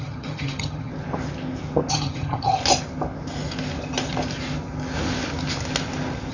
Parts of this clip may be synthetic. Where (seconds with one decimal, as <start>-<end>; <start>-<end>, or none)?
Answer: 0.0-0.9; 1.9-2.6